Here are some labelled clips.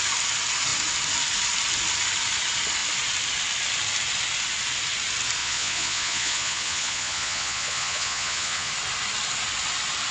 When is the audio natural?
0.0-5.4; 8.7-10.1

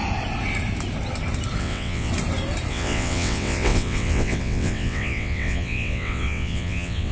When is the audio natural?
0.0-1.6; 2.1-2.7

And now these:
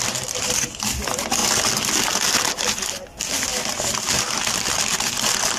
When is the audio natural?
1.4-3.1; 3.5-4.0; 4.9-5.6

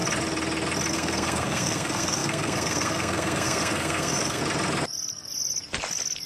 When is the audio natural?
0.0-0.9; 4.4-6.3

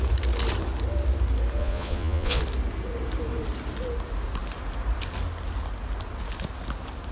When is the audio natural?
0.0-1.6; 2.4-7.1

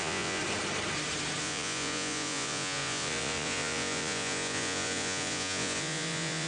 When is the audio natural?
0.4-1.4

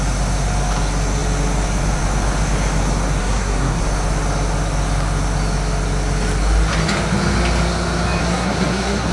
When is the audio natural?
0.0-3.2; 3.8-8.2